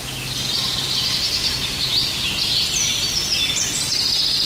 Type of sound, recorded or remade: remade